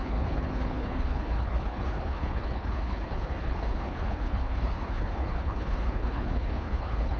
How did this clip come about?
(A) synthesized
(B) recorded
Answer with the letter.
A